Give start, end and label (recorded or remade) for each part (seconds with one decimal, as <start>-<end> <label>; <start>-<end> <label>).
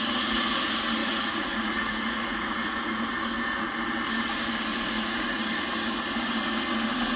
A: 0.0-1.0 recorded; 1.0-3.1 remade; 3.1-4.7 recorded; 4.7-5.4 remade; 5.4-7.2 recorded